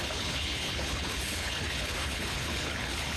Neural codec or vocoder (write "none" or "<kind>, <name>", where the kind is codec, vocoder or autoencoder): codec, HILCodec